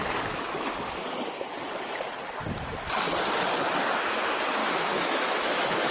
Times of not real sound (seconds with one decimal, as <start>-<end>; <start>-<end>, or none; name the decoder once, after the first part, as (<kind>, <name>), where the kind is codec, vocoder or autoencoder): 4.6-5.9 (autoencoder, DAC-VAE)